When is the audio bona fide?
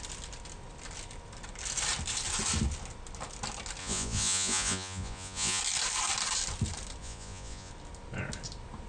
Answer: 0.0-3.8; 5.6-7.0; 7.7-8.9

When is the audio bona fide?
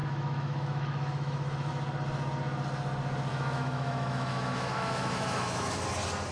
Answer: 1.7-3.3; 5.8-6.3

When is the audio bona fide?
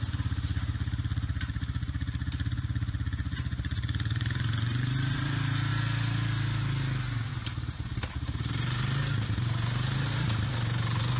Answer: 5.7-7.3